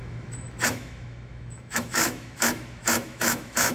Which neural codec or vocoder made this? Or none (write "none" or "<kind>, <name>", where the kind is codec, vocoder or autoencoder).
autoencoder, DAC-VAE